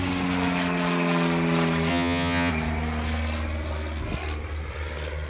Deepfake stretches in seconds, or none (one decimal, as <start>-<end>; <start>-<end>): 1.9-2.5